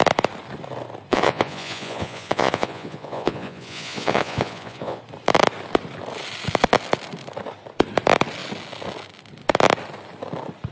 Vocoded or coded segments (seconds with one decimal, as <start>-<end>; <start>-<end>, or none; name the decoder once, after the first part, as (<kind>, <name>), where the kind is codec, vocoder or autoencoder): 1.1-5.0 (vocoder, Vocos)